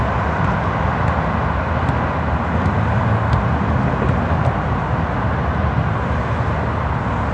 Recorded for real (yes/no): yes